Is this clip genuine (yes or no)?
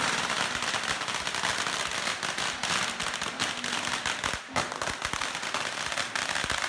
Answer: yes